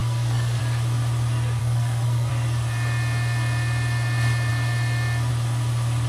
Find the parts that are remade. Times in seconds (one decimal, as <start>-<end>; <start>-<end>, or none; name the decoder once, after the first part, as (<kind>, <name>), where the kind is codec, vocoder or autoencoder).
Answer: 0.0-0.6 (codec, SNAC); 1.6-2.3